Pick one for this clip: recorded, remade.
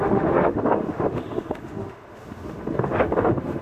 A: remade